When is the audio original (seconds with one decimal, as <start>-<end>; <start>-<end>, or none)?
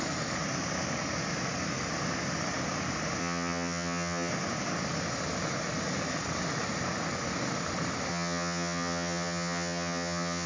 0.0-3.2; 4.3-8.1